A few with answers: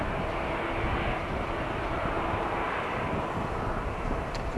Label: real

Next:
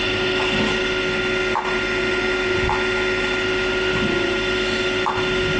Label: real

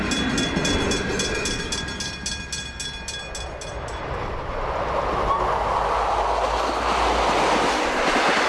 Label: real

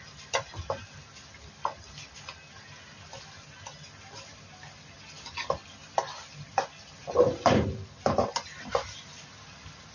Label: real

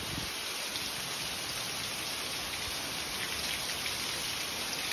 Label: real